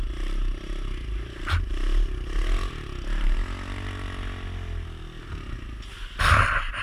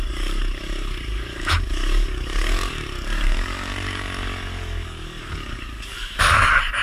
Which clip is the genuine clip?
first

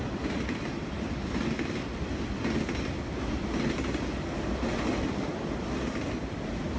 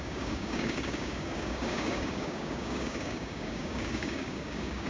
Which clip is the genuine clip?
first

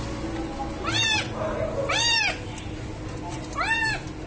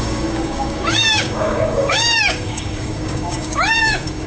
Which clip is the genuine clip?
first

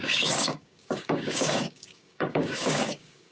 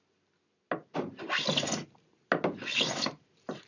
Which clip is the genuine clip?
second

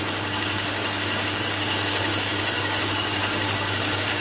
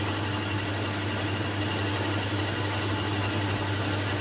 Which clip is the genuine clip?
second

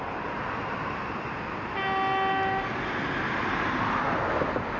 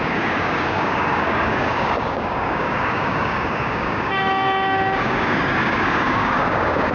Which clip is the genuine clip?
first